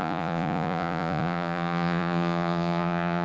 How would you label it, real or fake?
fake